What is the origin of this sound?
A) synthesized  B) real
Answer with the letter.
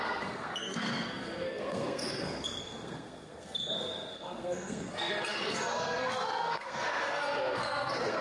A